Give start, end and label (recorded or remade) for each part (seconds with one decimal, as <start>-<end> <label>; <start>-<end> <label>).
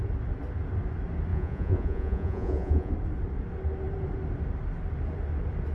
0.0-1.3 recorded; 1.3-2.9 remade; 2.9-5.7 recorded